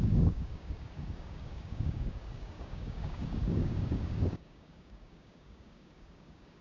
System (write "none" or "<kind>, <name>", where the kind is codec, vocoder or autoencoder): codec, DAC